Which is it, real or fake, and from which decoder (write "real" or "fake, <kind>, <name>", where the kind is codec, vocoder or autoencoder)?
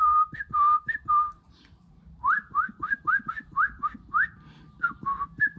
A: fake, vocoder, BigVGAN v2